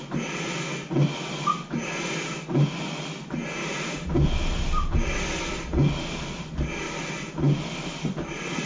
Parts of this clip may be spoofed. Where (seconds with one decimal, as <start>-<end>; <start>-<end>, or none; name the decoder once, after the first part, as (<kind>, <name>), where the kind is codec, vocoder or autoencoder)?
none